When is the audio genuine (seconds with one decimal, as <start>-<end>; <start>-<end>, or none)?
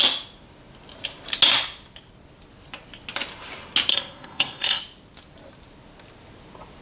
0.0-3.9; 4.8-6.8